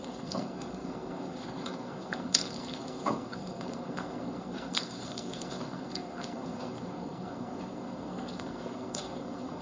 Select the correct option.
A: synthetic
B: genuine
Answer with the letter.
A